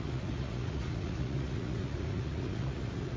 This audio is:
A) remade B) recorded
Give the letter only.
A